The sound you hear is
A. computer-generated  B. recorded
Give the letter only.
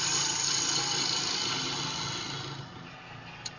B